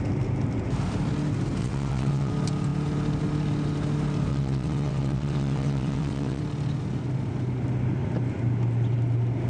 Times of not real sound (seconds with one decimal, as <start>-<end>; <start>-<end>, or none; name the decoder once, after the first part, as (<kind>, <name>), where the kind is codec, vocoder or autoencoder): 1.6-2.3 (vocoder, WaveNeXt); 4.3-6.4